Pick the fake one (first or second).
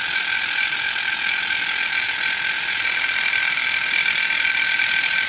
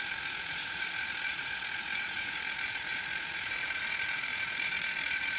second